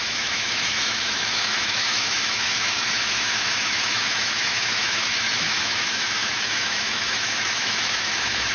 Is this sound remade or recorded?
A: remade